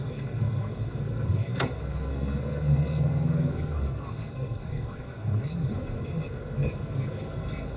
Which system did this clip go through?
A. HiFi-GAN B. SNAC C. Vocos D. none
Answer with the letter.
B